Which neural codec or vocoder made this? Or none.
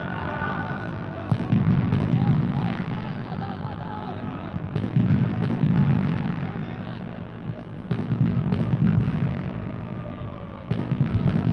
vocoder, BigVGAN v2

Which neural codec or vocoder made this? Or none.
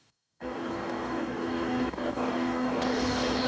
codec, DAC